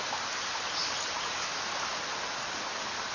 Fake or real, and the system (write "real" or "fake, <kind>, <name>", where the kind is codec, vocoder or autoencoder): real